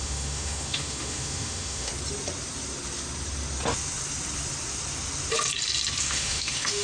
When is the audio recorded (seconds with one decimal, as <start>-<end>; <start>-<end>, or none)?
1.9-6.0